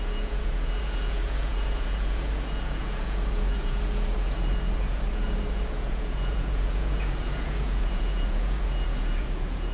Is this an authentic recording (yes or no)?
no